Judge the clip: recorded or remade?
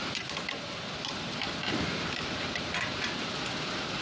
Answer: remade